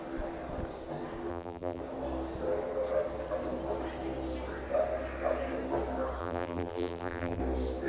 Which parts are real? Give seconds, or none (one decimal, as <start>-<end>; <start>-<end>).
0.0-1.3; 1.8-6.2; 7.4-7.9